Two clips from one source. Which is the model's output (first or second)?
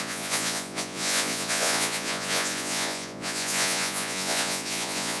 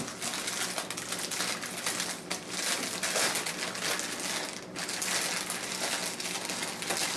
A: first